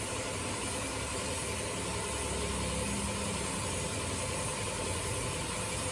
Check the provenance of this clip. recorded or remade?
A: recorded